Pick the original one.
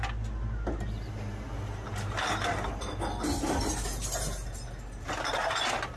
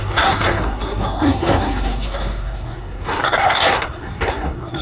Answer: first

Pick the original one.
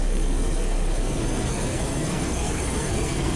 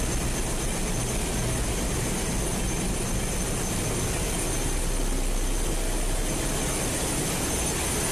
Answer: second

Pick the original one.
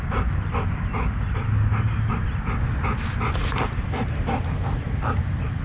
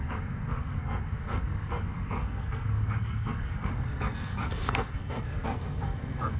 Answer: first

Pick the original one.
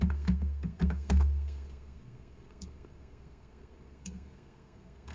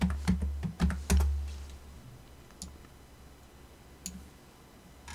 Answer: second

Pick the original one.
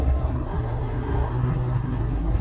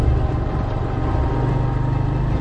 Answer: second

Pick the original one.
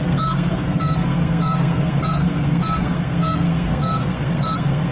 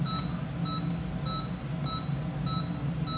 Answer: second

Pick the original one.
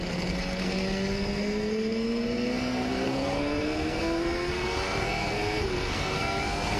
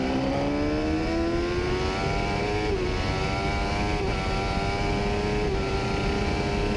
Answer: second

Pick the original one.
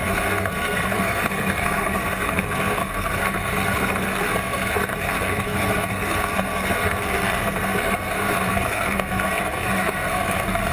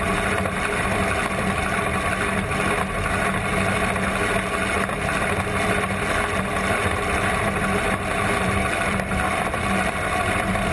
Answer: second